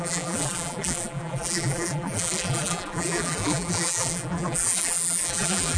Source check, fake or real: fake